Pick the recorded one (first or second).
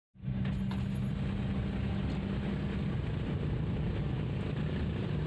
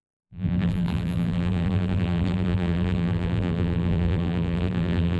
first